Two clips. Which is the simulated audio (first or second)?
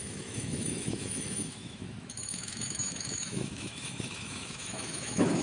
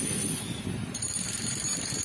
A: first